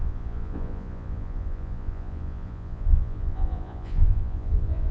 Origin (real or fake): fake